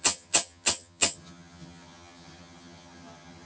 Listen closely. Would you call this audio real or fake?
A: fake